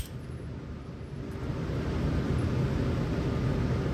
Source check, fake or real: real